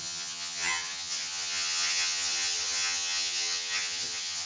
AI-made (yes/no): yes